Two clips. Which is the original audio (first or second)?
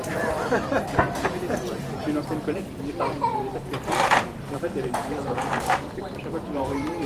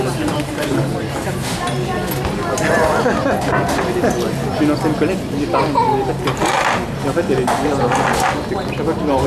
second